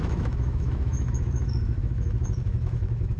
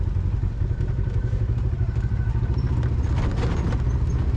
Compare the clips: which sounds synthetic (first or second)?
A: first